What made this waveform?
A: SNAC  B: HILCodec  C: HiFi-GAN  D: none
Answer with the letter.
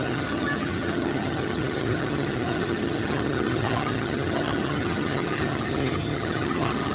C